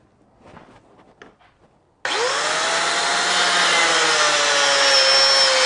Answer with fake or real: real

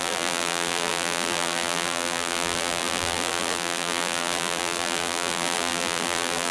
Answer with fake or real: fake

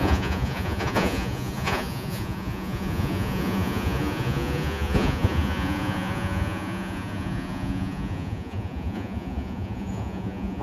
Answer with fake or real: fake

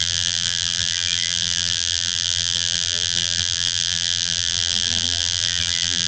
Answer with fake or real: fake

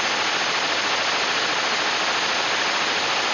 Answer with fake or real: real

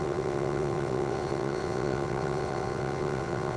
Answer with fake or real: fake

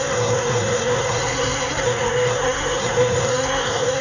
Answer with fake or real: fake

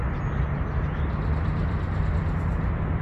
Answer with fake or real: real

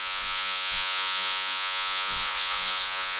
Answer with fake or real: fake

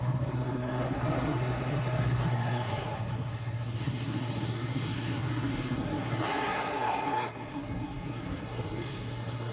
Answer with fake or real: fake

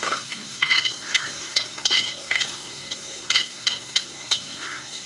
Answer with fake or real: fake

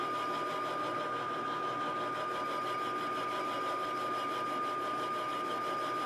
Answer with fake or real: real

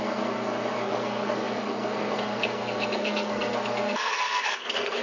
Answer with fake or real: fake